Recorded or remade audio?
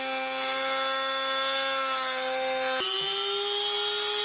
recorded